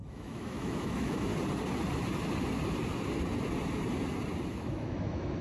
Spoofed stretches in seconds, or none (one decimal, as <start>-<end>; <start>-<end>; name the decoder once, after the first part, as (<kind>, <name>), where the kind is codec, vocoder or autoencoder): 0.0-1.3 (autoencoder, DAC-VAE); 4.5-5.4

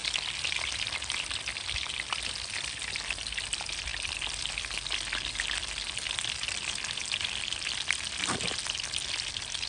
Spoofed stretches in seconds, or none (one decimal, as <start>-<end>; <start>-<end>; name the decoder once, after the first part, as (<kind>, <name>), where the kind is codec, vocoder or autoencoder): none

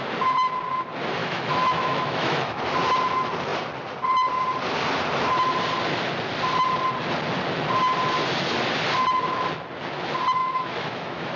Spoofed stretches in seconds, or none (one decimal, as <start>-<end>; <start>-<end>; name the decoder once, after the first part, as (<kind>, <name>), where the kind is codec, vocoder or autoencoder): 1.2-2.6 (autoencoder, DAC-VAE); 10.4-11.4

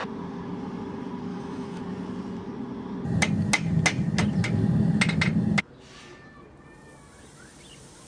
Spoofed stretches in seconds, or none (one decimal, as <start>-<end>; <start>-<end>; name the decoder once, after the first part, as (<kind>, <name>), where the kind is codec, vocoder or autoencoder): 1.3-1.8 (autoencoder, DAC-VAE)